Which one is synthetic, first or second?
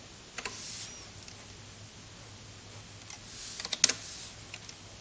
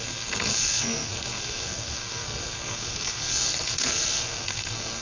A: second